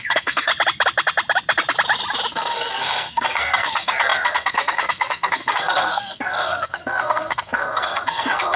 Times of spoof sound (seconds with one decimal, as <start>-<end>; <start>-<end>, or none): 0.0-0.5; 2.3-8.6